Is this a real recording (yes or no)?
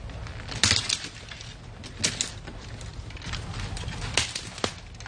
yes